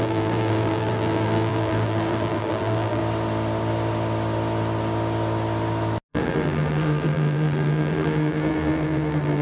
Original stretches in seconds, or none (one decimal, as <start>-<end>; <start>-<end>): 3.0-6.1

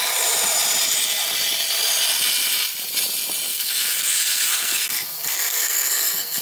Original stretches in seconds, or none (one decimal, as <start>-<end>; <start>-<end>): 0.0-3.5